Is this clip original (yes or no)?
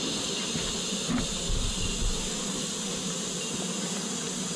yes